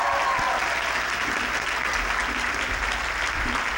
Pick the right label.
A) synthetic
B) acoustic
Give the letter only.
B